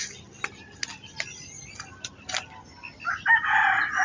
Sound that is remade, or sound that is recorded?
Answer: recorded